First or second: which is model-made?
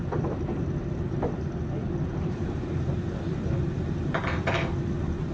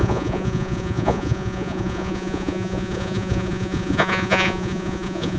second